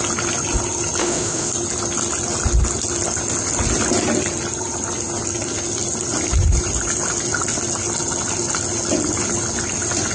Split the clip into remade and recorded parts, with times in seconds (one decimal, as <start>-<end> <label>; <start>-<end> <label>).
0.0-1.0 recorded; 1.0-1.5 remade; 1.5-10.1 recorded